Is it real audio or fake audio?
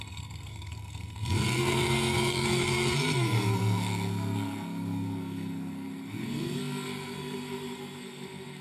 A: fake